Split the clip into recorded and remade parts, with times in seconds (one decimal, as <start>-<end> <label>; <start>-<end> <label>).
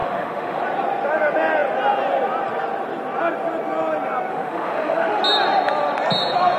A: 0.0-0.6 remade; 0.6-4.3 recorded; 4.3-5.2 remade; 5.2-6.6 recorded